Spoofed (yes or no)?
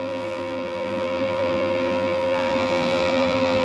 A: yes